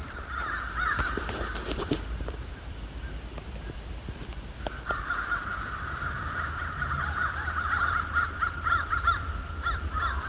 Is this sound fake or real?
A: fake